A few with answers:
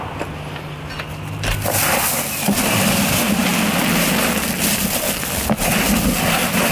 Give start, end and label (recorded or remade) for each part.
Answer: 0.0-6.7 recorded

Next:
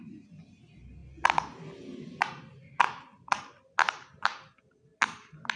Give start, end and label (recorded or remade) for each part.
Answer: 0.0-5.6 recorded